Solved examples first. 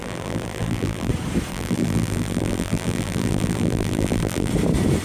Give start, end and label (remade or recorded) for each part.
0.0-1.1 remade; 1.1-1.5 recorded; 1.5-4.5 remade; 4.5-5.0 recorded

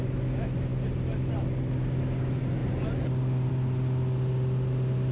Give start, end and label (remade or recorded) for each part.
0.0-5.1 recorded

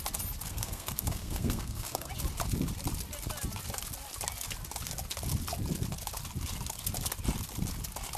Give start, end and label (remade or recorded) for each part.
0.0-0.5 recorded; 0.5-2.1 remade; 2.1-8.2 recorded

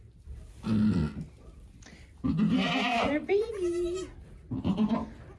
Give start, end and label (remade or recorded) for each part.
0.0-2.9 recorded; 2.9-3.5 remade; 3.5-5.4 recorded